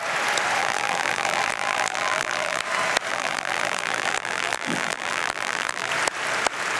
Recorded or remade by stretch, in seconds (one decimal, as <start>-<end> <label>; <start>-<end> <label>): 0.0-0.6 recorded; 0.6-2.6 remade; 2.6-3.1 recorded; 3.1-5.9 remade; 5.9-6.8 recorded

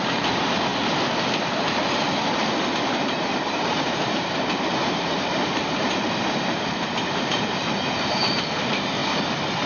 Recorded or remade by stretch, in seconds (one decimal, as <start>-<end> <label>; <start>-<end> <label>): 0.0-0.7 remade; 0.7-2.8 recorded; 2.8-9.0 remade; 9.0-9.7 recorded

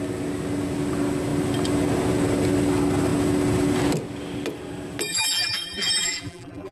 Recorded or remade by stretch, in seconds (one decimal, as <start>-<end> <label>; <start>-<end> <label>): 0.0-5.1 recorded; 5.1-6.7 remade

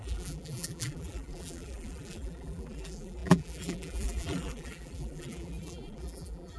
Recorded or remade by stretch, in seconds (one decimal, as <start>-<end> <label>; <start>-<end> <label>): 0.0-6.6 remade

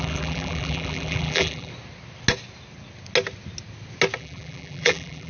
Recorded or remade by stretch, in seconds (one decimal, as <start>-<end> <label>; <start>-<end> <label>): 0.0-1.7 remade; 1.7-4.2 recorded; 4.2-5.3 remade

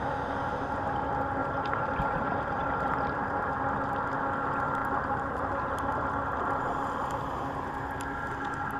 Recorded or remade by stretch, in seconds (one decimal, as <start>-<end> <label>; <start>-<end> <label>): 0.0-1.4 recorded; 1.4-3.7 remade; 3.7-4.8 recorded; 4.8-5.5 remade; 5.5-8.8 recorded